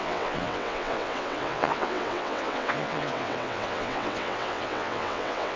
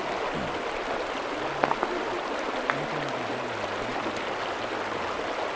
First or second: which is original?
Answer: second